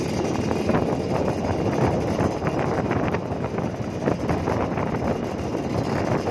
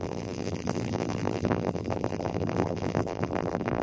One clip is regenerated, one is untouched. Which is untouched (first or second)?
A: first